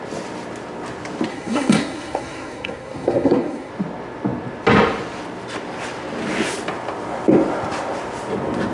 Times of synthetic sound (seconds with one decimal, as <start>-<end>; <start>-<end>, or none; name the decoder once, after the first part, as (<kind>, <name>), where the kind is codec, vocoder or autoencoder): 1.3-3.7 (codec, SNAC)